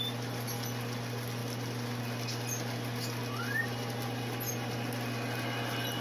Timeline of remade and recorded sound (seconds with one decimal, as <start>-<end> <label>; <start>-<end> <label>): 0.0-6.0 recorded